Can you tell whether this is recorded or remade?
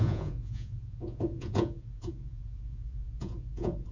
remade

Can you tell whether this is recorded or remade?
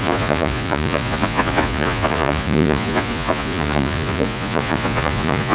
remade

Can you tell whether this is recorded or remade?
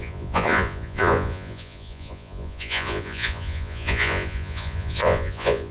remade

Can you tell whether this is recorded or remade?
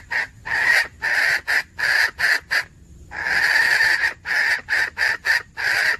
recorded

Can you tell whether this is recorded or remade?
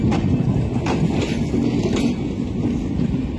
recorded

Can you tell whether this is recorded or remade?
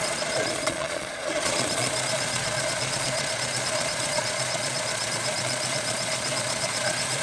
remade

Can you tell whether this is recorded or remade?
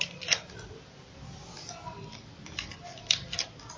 recorded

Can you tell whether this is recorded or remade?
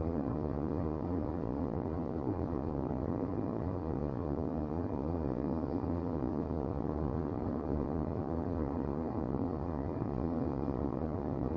remade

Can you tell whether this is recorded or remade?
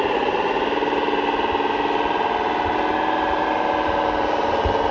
recorded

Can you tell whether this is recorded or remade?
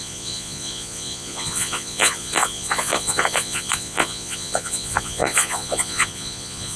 remade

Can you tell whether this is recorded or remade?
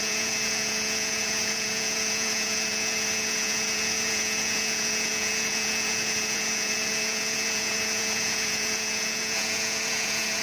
remade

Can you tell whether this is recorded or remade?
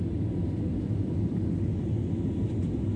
recorded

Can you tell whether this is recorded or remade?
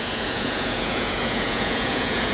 remade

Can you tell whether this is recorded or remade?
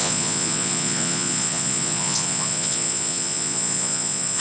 remade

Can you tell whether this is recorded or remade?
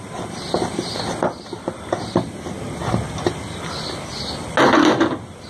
recorded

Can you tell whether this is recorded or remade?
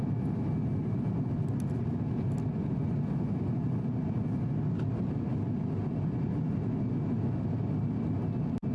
recorded